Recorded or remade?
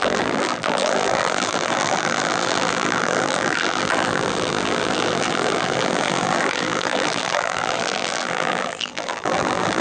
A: remade